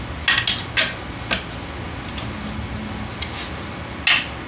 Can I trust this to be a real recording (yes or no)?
yes